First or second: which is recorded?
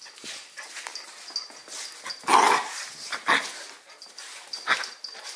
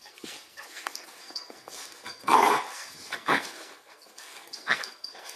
first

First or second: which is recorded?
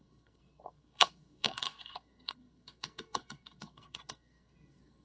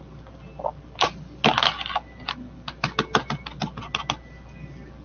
second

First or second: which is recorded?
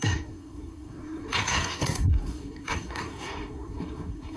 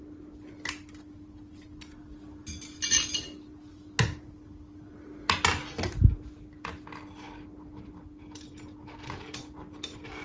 second